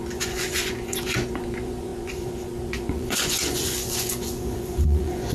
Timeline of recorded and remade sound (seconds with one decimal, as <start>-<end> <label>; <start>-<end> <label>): 0.0-5.3 remade